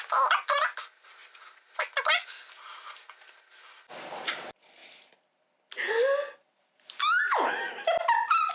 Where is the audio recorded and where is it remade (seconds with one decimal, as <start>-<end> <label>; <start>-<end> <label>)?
0.0-8.5 recorded

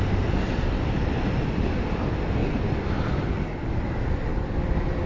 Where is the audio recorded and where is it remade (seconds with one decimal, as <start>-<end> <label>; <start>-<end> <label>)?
0.0-5.1 recorded

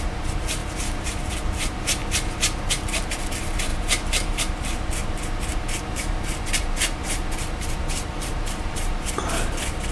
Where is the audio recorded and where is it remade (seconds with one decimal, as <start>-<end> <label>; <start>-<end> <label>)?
0.0-2.0 remade; 2.0-2.7 recorded; 2.7-9.9 remade